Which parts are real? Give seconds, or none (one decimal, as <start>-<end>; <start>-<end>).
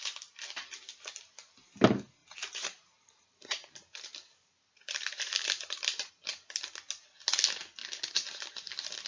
0.0-2.2; 6.1-9.1